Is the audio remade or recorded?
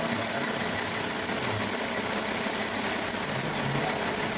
recorded